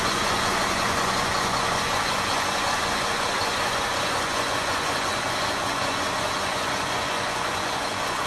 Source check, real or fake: fake